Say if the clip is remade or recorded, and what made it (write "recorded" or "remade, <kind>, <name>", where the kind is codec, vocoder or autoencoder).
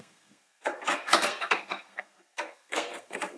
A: remade, codec, SNAC